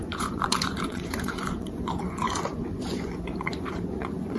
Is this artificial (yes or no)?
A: yes